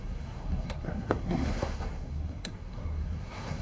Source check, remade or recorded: remade